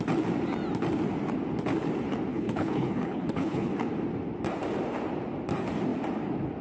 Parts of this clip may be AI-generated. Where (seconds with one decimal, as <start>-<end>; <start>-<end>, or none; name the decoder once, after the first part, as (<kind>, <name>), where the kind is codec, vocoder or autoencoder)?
2.3-3.7 (codec, HILCodec)